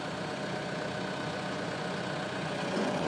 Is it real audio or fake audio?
fake